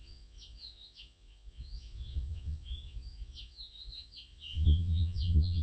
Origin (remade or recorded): remade